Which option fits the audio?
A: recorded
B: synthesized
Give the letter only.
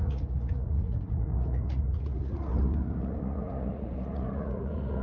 B